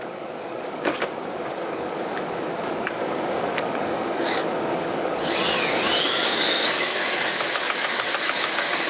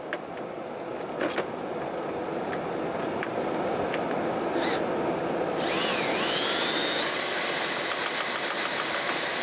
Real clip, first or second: second